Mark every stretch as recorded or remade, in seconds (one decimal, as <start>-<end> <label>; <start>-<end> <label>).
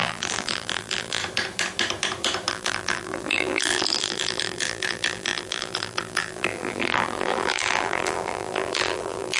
0.0-1.2 remade; 1.2-2.5 recorded; 2.5-9.4 remade